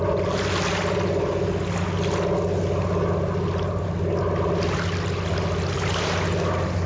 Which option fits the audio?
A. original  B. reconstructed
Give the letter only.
A